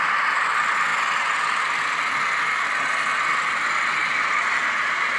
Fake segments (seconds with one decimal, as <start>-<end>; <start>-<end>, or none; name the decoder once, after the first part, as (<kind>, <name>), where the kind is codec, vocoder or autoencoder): none